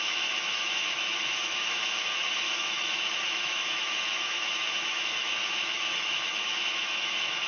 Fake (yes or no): yes